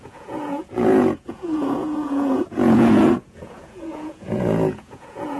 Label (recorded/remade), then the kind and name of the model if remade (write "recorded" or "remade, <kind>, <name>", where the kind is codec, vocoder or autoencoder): remade, vocoder, Vocos